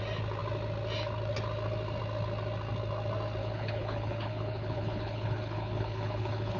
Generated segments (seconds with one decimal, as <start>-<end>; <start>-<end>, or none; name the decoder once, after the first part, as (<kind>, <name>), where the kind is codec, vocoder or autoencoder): 3.4-6.6 (codec, HILCodec)